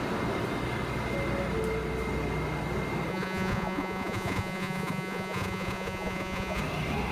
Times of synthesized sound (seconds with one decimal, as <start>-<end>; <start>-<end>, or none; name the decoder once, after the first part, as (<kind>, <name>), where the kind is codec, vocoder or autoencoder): 3.1-6.6 (vocoder, Vocos)